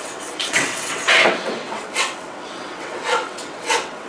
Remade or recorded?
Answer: remade